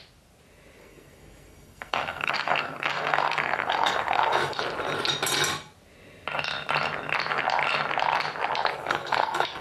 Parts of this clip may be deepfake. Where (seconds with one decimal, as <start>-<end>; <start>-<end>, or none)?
0.8-4.6; 8.8-9.6